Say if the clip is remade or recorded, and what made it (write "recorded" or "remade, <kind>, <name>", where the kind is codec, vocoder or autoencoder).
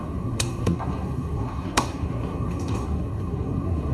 remade, codec, SNAC